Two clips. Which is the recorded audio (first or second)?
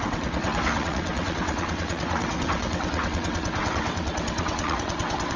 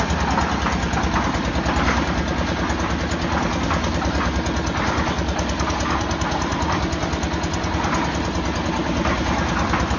second